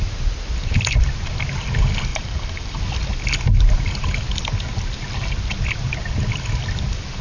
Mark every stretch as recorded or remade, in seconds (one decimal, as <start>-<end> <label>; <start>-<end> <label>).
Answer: 0.0-2.1 recorded; 2.1-2.8 remade; 2.8-7.2 recorded